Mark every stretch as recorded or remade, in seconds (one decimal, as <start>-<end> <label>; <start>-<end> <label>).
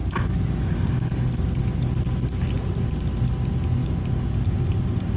0.0-5.2 recorded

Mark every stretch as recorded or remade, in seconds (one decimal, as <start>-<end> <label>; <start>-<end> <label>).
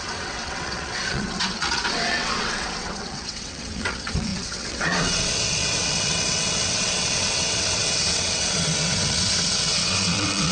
0.0-10.5 remade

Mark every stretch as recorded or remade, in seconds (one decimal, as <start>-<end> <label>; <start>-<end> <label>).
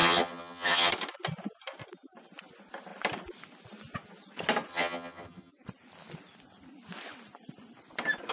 0.0-0.9 remade; 0.9-4.7 recorded; 4.7-5.5 remade; 5.5-8.3 recorded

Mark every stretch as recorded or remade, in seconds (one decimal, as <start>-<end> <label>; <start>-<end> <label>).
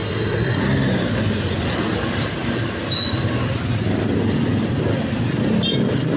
0.0-0.6 remade; 0.6-6.2 recorded